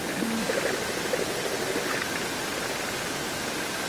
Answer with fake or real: real